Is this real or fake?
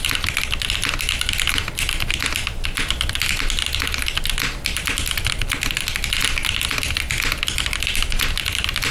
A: real